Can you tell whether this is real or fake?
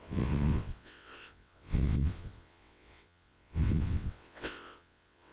fake